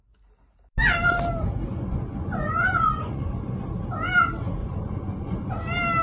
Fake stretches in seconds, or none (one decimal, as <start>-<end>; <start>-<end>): 1.7-3.7; 4.6-5.5